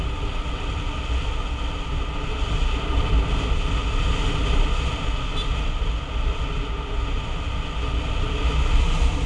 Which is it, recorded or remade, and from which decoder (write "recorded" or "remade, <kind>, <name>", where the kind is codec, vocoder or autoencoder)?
recorded